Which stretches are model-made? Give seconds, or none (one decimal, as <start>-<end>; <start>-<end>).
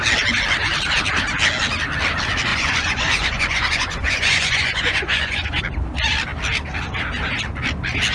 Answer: 2.5-5.6